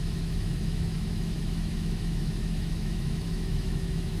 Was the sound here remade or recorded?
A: remade